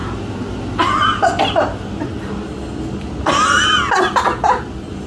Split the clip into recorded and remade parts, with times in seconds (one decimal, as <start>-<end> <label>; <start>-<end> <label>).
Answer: 0.0-5.1 recorded

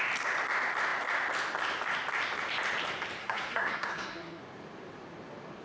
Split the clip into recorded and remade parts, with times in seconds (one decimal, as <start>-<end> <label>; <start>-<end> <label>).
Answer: 0.0-3.2 recorded; 3.2-4.4 remade; 4.4-5.6 recorded

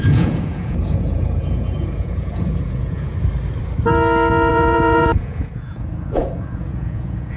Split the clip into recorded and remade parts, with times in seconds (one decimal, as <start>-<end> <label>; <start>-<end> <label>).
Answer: 0.0-3.1 remade; 3.1-4.5 recorded; 4.5-7.4 remade

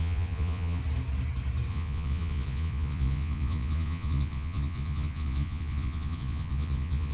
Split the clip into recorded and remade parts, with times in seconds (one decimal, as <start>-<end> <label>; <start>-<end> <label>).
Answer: 0.0-0.8 remade; 0.8-1.7 recorded; 1.7-7.1 remade

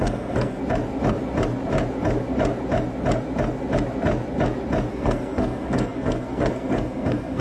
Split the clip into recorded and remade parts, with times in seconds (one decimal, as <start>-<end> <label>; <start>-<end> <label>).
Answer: 0.0-0.6 remade; 0.6-4.9 recorded; 4.9-7.4 remade